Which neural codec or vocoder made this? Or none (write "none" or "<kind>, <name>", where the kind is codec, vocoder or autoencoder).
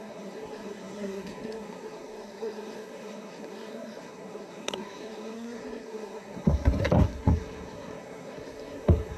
codec, SNAC